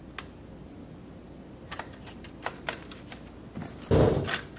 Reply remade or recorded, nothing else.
recorded